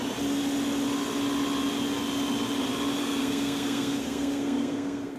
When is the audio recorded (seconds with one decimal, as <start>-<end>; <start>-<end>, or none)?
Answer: 0.0-3.0